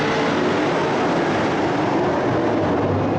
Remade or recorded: recorded